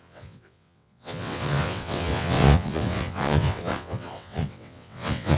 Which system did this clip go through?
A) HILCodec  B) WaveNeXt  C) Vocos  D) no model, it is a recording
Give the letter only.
B